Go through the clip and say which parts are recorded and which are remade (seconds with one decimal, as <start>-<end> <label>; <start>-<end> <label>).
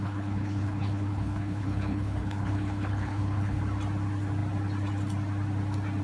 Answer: 0.0-3.6 remade; 3.6-6.0 recorded